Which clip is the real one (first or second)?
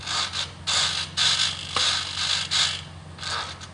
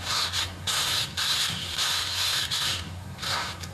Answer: first